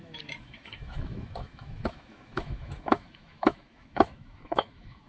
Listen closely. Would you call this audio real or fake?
fake